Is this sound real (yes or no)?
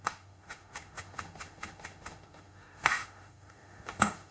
no